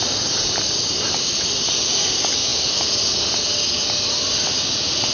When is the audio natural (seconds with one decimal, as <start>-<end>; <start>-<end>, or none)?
0.0-5.1